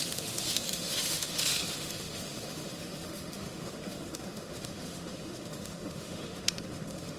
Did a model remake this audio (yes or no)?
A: yes